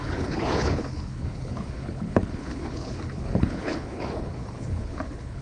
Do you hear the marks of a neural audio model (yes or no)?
yes